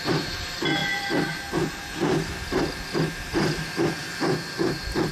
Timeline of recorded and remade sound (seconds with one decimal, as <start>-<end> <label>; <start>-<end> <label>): 0.0-5.1 remade